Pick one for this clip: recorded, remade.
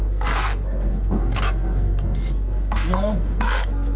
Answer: remade